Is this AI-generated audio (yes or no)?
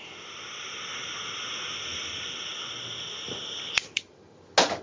no